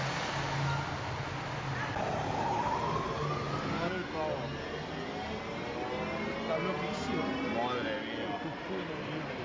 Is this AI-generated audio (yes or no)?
no